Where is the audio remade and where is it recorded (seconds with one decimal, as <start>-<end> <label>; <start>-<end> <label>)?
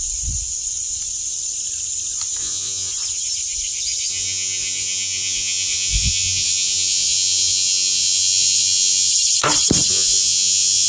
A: 0.0-2.4 recorded; 2.4-2.9 remade; 2.9-4.1 recorded; 4.1-9.1 remade; 9.1-9.9 recorded; 9.9-10.9 remade